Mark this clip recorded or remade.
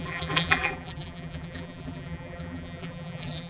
remade